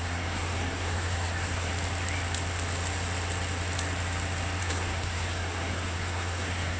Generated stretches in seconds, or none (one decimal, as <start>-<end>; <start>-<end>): 0.0-1.7; 4.6-6.8